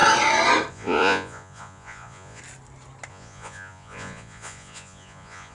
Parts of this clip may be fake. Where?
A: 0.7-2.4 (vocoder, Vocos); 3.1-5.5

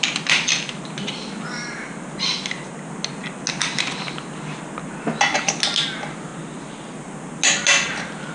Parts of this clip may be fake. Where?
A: none

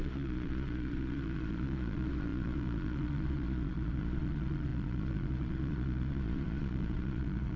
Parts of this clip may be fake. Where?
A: 0.0-7.6 (vocoder, Vocos)

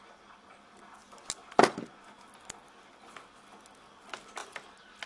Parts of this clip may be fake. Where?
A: none

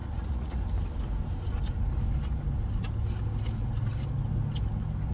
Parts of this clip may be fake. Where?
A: 0.0-0.6 (vocoder, Vocos)

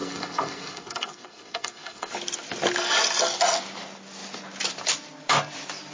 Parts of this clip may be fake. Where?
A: 0.0-2.1 (codec, SNAC)

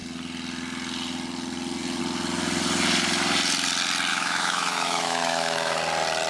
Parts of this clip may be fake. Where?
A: 4.1-5.8 (autoencoder, DAC-VAE)

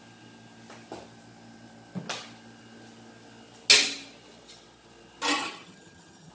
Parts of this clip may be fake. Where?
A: 5.4-6.3 (vocoder, HiFi-GAN)